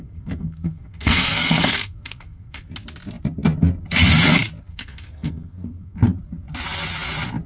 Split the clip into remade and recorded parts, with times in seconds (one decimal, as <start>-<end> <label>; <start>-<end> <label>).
0.0-2.7 remade; 2.7-4.7 recorded; 4.7-6.0 remade; 6.0-7.5 recorded